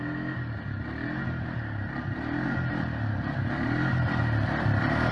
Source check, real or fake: real